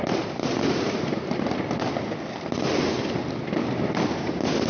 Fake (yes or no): yes